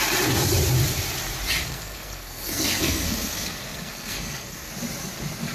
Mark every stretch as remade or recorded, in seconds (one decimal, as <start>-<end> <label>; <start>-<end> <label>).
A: 0.0-1.6 recorded; 1.6-4.7 remade; 4.7-5.5 recorded